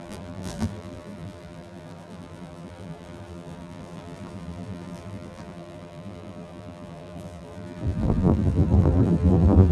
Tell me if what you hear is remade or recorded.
remade